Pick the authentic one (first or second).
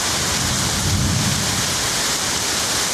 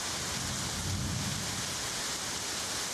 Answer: second